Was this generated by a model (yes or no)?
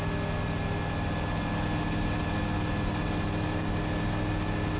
no